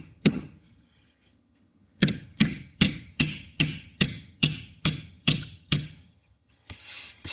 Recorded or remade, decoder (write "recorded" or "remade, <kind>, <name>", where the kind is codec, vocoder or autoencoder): remade, vocoder, HiFi-GAN